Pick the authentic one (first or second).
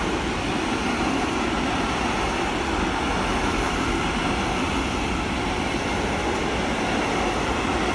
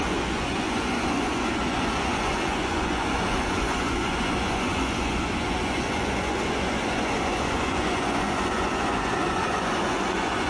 first